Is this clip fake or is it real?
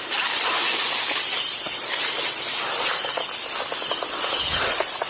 real